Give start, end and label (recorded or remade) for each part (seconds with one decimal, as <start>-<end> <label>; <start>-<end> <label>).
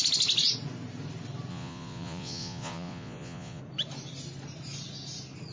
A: 0.0-1.5 recorded; 1.5-3.6 remade; 3.6-5.5 recorded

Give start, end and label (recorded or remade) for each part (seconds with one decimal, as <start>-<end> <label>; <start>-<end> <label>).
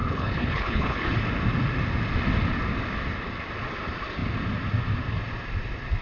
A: 0.0-1.1 remade; 1.1-6.0 recorded